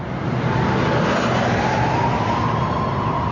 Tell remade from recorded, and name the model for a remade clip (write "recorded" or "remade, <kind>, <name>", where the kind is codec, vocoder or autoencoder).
recorded